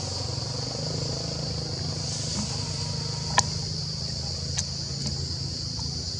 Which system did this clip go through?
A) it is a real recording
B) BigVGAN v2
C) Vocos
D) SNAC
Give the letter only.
A